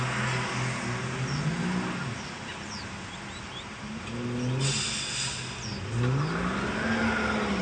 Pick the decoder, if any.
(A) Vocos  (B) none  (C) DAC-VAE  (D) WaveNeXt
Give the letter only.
B